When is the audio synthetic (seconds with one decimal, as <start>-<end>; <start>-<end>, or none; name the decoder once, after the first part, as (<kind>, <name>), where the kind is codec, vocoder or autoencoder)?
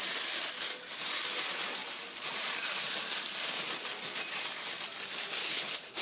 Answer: 5.4-6.0 (codec, HILCodec)